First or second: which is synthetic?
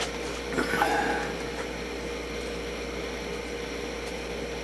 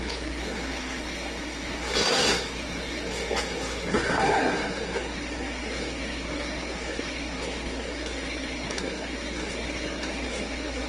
second